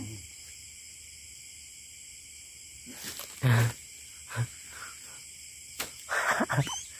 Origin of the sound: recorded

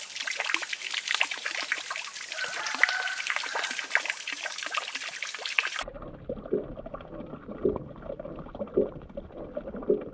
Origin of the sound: recorded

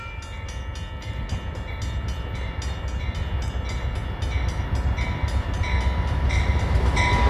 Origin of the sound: recorded